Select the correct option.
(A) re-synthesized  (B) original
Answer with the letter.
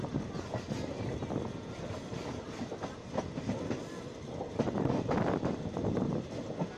B